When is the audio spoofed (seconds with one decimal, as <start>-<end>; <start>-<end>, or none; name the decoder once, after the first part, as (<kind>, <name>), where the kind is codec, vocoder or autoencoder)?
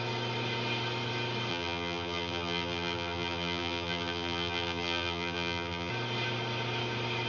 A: 1.5-5.9 (vocoder, BigVGAN v2)